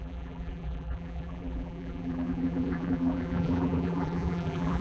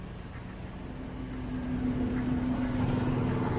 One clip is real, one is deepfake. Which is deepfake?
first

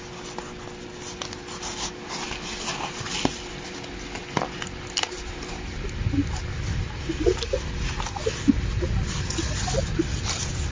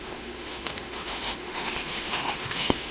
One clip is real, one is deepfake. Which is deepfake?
second